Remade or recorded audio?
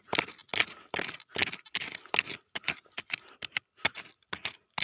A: recorded